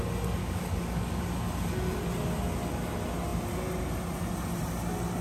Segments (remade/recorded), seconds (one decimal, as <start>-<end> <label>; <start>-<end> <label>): 0.0-0.4 recorded; 0.4-1.2 remade; 1.2-5.2 recorded